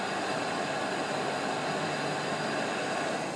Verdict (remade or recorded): recorded